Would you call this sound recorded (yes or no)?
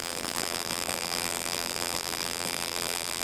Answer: no